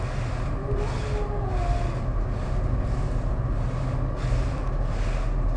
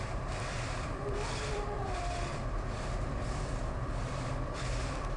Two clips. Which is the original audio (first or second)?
first